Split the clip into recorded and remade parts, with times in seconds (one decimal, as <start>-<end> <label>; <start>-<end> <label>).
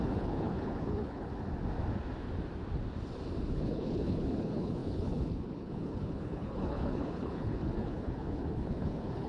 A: 0.0-1.3 remade; 1.3-3.5 recorded; 3.5-9.3 remade